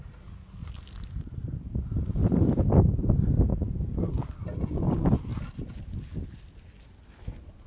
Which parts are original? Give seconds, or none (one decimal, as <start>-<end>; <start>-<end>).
0.0-0.6; 1.3-2.2; 2.8-3.5; 4.3-7.7